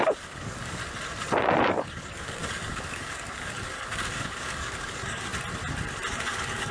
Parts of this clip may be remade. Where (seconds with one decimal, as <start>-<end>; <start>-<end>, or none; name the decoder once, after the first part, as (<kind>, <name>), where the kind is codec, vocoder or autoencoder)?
0.0-0.8 (codec, DAC); 1.7-5.3; 6.1-6.7